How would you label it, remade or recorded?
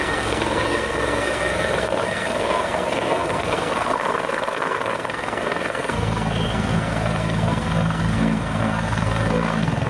remade